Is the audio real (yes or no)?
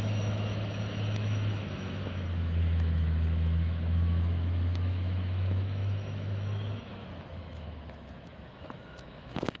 no